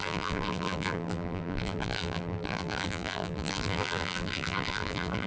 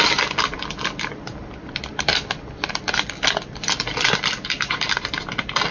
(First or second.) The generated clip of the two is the first